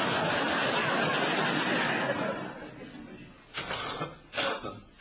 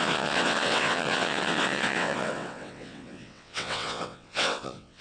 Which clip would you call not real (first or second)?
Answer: second